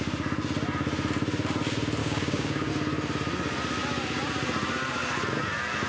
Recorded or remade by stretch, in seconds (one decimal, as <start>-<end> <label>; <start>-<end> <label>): 0.0-2.0 recorded; 2.0-2.7 remade; 2.7-5.9 recorded